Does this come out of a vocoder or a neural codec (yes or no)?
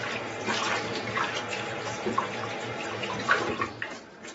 no